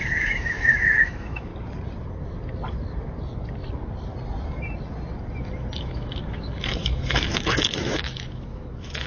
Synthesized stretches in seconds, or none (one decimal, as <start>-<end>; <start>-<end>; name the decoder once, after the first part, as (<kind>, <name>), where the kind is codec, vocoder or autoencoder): 0.0-1.5 (autoencoder, DAC-VAE); 5.8-9.1